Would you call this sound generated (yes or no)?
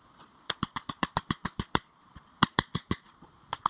yes